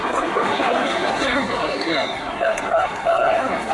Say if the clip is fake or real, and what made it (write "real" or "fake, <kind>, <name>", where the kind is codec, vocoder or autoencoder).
fake, codec, SNAC